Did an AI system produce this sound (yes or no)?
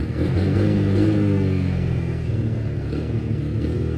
yes